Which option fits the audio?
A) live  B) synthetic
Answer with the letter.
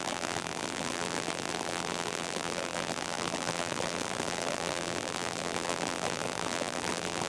B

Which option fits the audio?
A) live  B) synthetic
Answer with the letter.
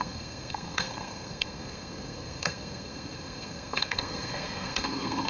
B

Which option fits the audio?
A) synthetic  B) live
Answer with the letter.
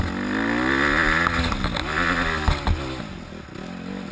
B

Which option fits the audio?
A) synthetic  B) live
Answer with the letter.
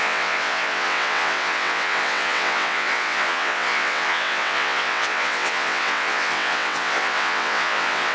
A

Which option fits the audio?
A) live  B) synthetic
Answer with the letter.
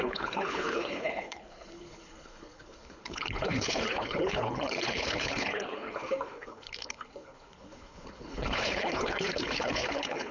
B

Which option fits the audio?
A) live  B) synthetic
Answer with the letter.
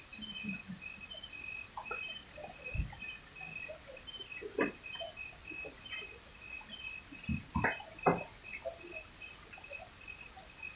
A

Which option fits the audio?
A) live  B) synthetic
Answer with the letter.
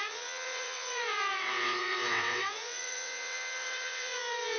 B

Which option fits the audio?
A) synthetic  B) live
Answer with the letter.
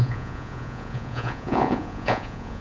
A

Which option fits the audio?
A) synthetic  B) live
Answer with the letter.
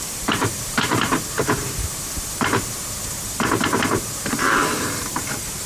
A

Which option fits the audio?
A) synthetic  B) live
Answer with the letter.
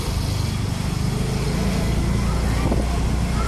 B